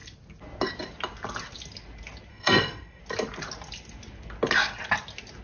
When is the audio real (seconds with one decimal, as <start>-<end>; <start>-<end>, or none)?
0.0-2.3; 3.0-5.4